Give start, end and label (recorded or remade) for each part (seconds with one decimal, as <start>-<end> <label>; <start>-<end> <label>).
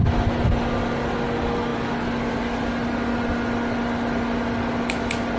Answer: 0.0-5.4 recorded